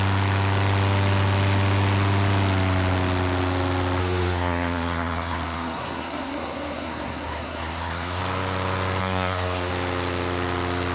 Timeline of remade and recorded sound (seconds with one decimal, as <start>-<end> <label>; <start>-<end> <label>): 0.0-4.0 recorded; 4.0-8.2 remade; 8.2-9.0 recorded; 9.0-9.7 remade; 9.7-10.9 recorded